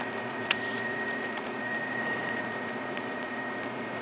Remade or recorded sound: remade